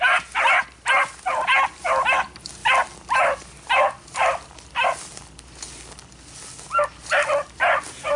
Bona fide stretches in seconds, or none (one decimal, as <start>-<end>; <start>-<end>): 0.0-8.2